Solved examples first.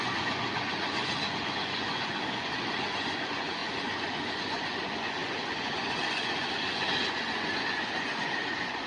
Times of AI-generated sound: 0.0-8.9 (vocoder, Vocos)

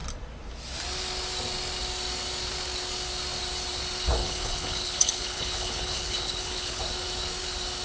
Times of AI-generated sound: 4.2-6.8 (codec, HILCodec)

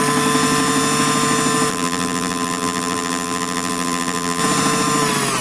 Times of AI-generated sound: 1.7-4.4 (vocoder, BigVGAN v2)